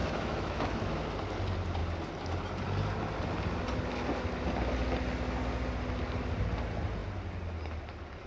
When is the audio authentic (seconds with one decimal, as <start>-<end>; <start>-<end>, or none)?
0.8-8.3